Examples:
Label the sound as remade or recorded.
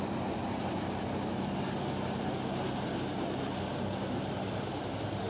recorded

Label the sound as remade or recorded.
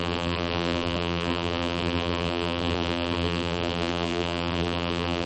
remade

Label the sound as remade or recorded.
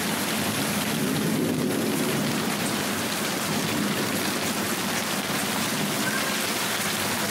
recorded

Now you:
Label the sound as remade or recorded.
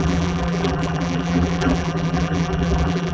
remade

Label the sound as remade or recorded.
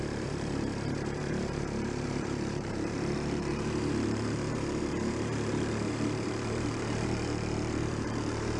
remade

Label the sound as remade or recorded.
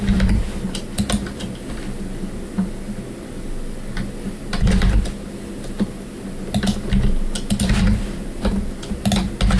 recorded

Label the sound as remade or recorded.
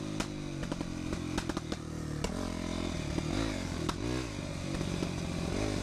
recorded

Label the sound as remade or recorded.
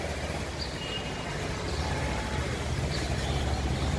recorded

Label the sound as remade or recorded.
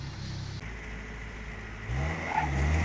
recorded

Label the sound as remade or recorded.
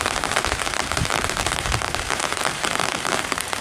remade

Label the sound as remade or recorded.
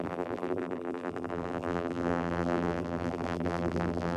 remade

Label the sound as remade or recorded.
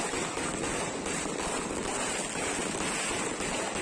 recorded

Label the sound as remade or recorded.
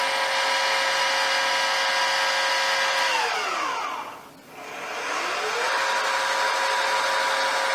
recorded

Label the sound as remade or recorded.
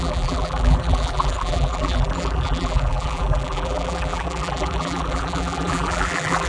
remade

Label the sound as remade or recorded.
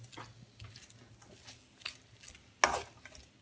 recorded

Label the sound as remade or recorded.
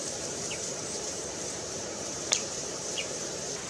remade